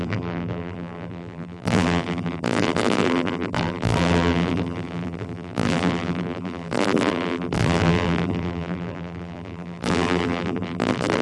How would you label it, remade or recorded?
remade